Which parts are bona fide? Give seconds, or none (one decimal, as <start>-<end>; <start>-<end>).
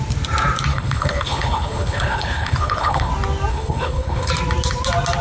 0.0-0.7; 3.1-3.5; 4.3-5.2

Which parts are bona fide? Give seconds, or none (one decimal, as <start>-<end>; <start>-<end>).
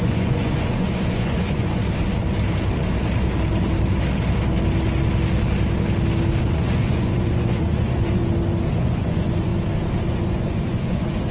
1.8-6.5; 8.2-8.8; 9.5-10.1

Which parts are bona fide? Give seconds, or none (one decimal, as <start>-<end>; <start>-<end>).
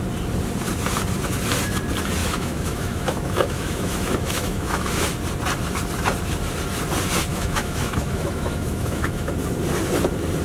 0.0-2.2; 5.0-7.3; 9.3-10.4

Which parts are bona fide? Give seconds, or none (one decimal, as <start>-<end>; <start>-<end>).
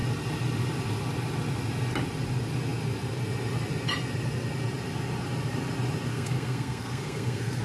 0.0-6.1